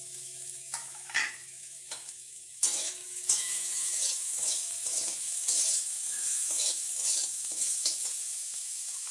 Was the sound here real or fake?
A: fake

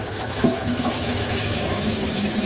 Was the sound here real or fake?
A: fake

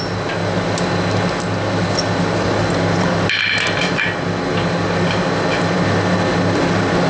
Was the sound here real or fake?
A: real